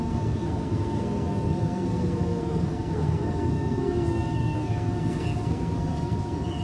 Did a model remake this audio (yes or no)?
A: yes